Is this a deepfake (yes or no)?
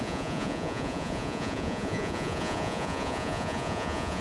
yes